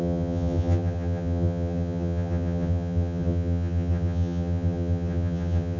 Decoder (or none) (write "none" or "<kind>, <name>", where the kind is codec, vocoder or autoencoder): vocoder, HiFi-GAN